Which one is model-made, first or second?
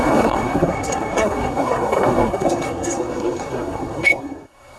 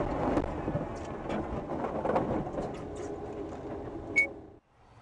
first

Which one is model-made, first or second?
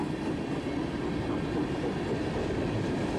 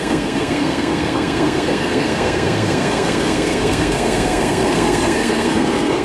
second